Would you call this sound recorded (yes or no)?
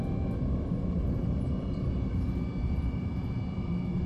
yes